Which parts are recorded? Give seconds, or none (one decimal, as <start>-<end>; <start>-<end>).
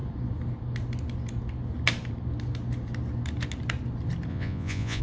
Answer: 0.0-4.3